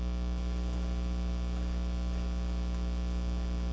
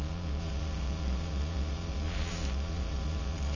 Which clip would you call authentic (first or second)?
first